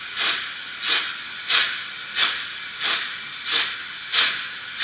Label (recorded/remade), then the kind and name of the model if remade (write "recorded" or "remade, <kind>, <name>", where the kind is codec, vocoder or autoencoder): recorded